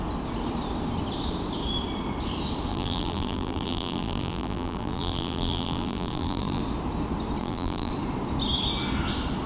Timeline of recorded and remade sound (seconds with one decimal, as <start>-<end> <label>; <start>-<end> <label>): 0.0-2.7 recorded; 2.7-6.6 remade; 6.6-7.4 recorded; 7.4-7.9 remade; 7.9-9.5 recorded